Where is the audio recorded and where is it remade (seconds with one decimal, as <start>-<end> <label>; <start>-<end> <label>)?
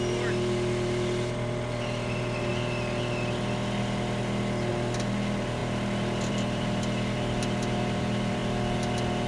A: 0.0-2.5 remade; 2.5-4.7 recorded; 4.7-5.6 remade; 5.6-6.3 recorded; 6.3-9.3 remade